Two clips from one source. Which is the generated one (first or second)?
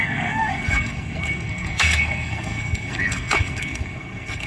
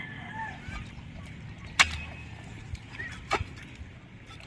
first